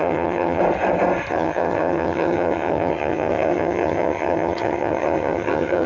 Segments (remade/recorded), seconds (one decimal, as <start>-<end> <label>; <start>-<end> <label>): 0.0-0.6 remade; 0.6-1.3 recorded; 1.3-5.9 remade